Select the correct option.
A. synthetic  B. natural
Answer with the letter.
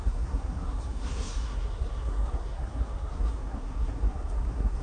A